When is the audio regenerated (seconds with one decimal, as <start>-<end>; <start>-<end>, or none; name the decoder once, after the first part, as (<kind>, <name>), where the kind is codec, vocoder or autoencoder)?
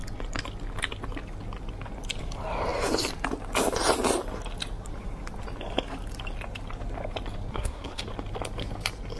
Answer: 7.5-8.0 (codec, SNAC)